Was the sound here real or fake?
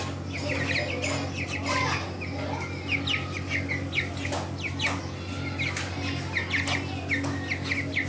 real